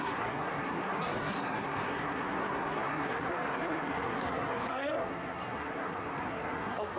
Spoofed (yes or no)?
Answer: yes